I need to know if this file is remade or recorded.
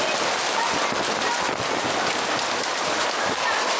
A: recorded